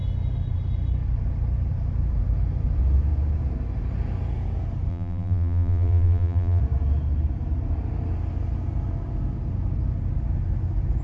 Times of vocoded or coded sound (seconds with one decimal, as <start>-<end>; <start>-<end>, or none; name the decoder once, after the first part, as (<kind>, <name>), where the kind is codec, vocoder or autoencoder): 4.9-6.6 (vocoder, BigVGAN v2)